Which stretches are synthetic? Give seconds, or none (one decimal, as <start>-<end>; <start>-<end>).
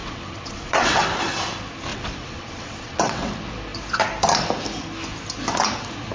0.0-1.0; 1.9-3.3